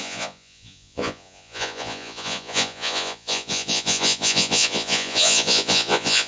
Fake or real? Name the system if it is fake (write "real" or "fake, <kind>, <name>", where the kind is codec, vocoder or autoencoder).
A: fake, vocoder, Vocos